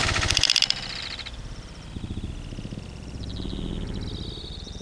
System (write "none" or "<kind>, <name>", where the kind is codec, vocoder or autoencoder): none